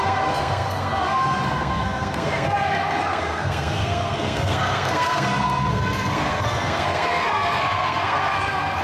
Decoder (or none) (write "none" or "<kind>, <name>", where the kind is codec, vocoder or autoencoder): codec, SNAC